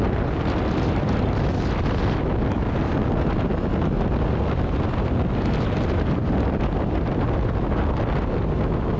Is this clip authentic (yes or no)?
yes